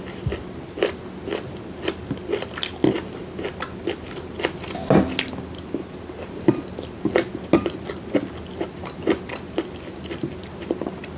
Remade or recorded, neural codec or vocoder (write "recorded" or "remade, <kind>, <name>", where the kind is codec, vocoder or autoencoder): recorded